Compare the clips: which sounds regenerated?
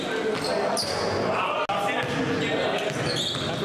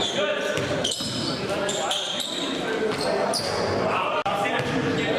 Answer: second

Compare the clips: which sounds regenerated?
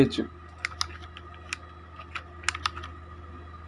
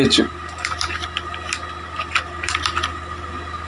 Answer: second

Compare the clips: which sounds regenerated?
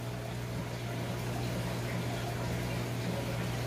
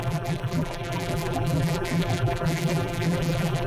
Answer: second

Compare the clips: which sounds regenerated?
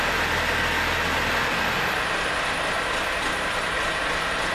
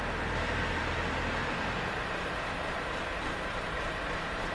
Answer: second